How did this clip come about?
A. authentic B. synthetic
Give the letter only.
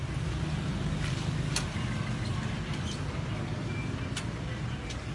A